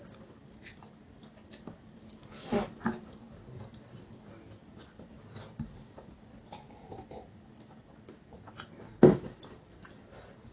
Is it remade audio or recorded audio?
remade